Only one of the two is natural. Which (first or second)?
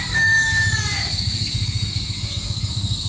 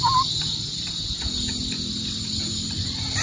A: second